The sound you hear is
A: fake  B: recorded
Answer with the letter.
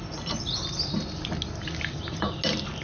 B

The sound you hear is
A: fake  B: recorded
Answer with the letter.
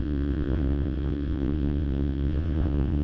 A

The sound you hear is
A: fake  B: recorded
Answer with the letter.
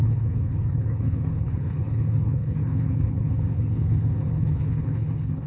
A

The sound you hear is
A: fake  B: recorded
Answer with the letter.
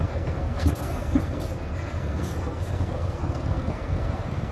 A